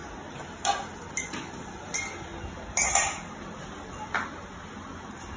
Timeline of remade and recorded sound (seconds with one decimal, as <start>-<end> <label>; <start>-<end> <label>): 0.0-5.4 recorded